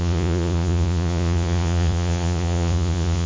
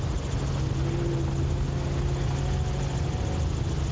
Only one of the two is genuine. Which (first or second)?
second